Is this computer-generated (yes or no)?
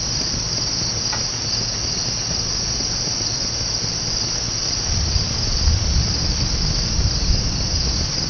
no